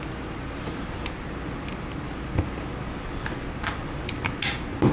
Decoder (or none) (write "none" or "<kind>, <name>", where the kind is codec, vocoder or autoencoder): none